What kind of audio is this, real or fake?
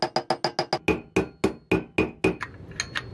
real